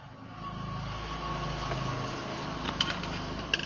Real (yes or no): yes